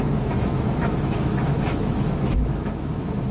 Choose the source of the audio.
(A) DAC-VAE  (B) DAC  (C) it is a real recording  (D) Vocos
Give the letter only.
A